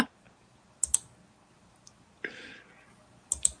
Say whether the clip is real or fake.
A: real